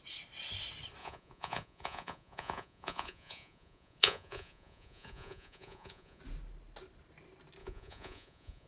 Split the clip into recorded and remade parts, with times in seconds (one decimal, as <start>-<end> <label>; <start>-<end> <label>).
0.0-1.0 recorded; 1.0-6.2 remade; 6.2-7.6 recorded; 7.6-8.7 remade